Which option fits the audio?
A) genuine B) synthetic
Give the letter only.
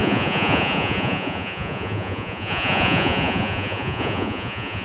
B